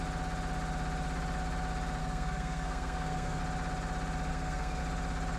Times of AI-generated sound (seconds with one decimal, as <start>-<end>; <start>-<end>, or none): 2.0-3.4; 4.3-4.8